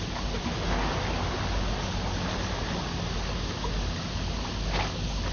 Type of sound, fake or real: real